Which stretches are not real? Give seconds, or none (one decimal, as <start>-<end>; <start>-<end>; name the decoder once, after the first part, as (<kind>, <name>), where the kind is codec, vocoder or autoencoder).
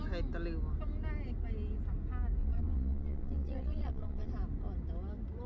2.4-4.3 (vocoder, Vocos)